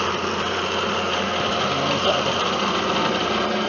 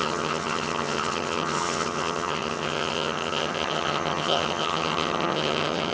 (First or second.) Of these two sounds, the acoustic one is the first